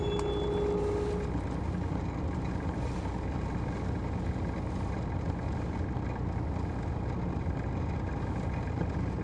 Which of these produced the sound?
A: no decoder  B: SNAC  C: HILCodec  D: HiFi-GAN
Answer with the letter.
A